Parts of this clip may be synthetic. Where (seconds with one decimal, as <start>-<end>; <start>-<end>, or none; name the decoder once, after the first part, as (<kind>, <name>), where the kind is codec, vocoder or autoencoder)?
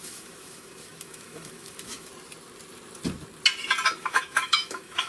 0.0-2.1 (autoencoder, DAC-VAE); 4.0-5.1